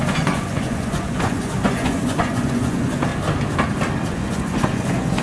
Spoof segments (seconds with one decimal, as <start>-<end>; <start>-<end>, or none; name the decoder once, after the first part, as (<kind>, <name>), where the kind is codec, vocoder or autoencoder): 0.0-3.1 (vocoder, Vocos); 4.1-5.2